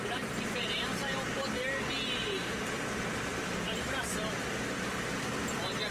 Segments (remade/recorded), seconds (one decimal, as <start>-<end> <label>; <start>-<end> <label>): 0.0-2.4 recorded; 2.4-4.0 remade; 4.0-4.4 recorded; 4.4-5.2 remade; 5.2-5.9 recorded